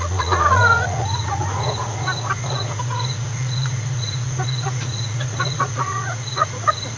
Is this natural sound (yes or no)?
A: no